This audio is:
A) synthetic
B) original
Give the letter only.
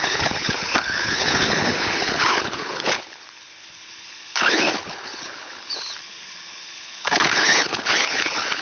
A